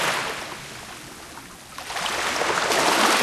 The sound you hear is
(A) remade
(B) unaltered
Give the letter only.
B